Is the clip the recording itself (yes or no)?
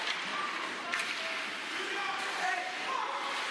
no